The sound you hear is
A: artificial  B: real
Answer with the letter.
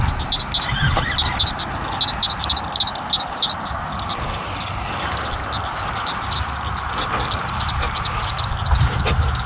B